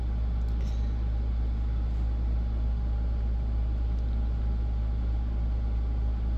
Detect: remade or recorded recorded